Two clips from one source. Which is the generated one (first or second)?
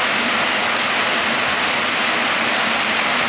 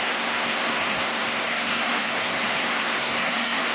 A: second